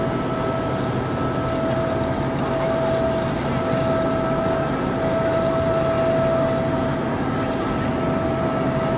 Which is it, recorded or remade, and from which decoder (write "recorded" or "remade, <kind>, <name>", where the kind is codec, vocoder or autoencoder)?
recorded